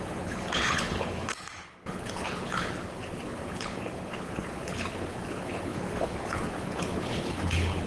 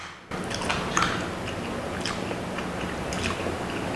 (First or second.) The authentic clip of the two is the second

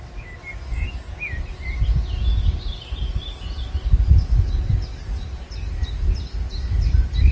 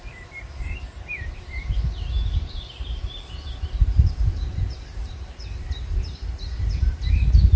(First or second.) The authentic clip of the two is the first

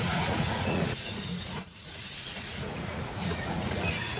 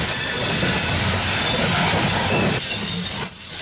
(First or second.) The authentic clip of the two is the second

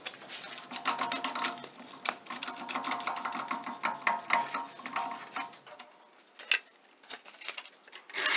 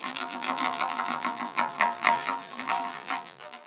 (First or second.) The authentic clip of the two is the first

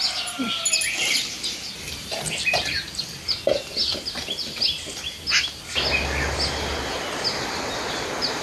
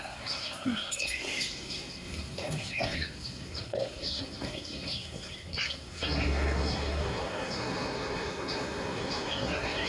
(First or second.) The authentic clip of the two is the first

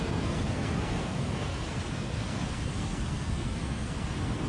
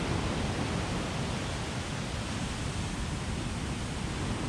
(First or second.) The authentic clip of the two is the second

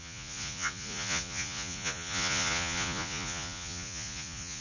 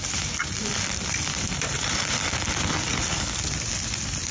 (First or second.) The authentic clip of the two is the second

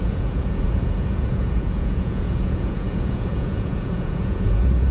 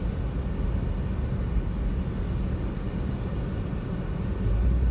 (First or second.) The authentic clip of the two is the second